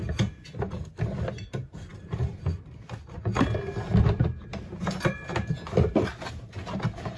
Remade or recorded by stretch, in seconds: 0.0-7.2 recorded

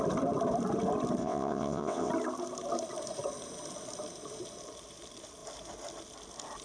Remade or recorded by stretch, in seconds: 0.0-1.2 recorded; 1.2-2.1 remade; 2.1-6.6 recorded

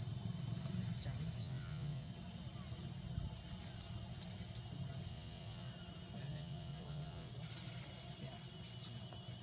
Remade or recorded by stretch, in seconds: 0.0-1.4 recorded; 1.4-2.1 remade; 2.1-5.1 recorded; 5.1-5.7 remade; 5.7-6.3 recorded; 6.3-7.3 remade; 7.3-9.4 recorded